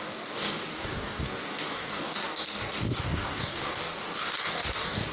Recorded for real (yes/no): no